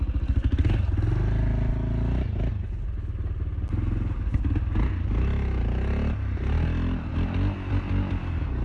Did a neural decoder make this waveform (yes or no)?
no